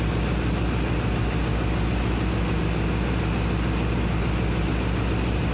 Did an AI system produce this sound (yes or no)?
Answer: no